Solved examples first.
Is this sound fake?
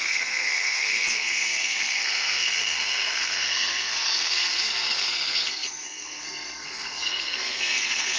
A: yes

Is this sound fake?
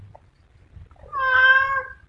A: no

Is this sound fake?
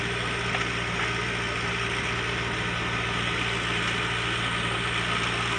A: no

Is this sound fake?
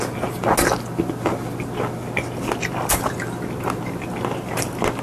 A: no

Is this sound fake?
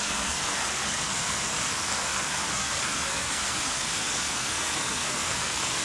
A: yes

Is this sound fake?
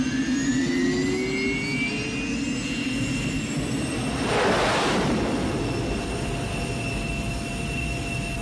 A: no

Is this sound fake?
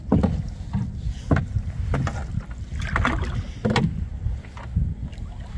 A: no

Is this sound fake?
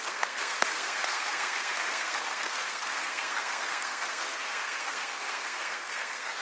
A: yes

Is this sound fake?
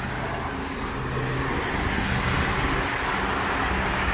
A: no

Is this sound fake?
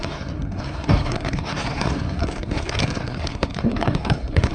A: yes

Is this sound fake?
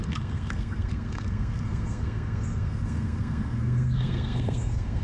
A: yes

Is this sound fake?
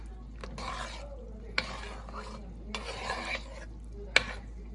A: no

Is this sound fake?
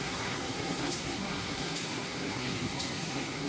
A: yes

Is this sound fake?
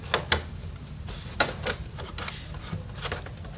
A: no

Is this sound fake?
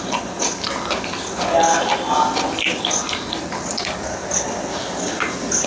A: no